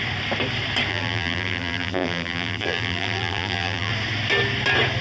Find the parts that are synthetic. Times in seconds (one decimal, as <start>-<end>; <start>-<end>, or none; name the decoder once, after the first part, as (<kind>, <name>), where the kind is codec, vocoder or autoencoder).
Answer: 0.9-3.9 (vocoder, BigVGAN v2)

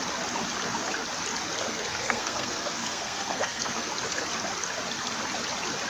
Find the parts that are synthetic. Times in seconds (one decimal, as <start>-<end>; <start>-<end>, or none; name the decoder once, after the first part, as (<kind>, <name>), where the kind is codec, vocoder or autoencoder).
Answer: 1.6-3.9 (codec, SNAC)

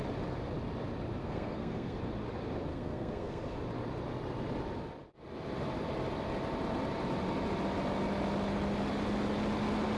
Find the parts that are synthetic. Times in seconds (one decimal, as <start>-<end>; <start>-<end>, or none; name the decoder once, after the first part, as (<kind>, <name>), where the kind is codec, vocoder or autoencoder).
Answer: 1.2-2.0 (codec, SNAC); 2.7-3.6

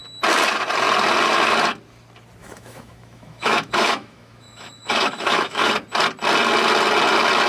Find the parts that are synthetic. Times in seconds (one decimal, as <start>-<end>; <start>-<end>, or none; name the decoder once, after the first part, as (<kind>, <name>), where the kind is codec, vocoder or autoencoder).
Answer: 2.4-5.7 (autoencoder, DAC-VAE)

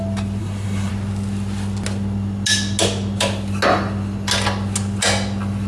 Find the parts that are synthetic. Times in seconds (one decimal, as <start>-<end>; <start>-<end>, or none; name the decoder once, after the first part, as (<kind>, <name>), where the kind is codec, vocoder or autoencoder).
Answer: 0.4-0.9 (codec, SNAC)

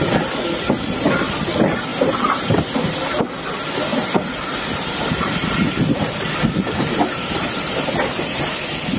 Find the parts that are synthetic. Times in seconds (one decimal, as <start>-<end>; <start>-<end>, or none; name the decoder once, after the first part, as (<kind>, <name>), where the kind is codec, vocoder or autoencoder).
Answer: 1.9-3.2 (vocoder, BigVGAN v2); 3.9-7.9